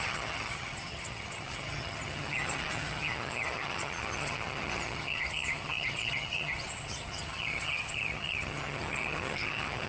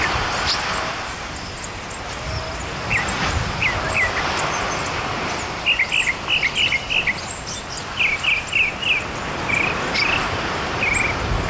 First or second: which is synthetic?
first